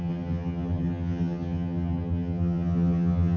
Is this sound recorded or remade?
remade